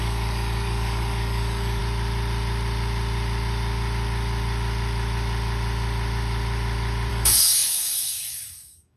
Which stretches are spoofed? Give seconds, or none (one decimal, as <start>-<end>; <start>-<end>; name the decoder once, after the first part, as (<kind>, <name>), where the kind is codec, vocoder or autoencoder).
0.0-1.8 (codec, DAC); 7.1-9.0